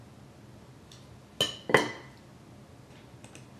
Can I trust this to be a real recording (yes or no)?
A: yes